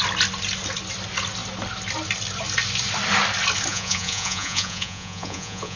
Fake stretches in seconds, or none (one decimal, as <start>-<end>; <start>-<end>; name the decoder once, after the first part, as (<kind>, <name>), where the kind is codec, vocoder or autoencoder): 3.7-5.8 (vocoder, Vocos)